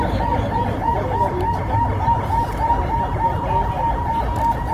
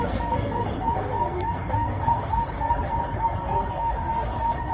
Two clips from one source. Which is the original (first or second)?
first